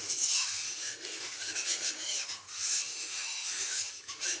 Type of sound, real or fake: fake